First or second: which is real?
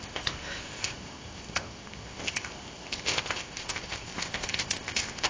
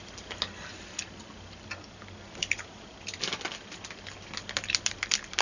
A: second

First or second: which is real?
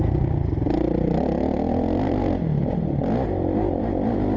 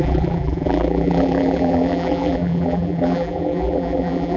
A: first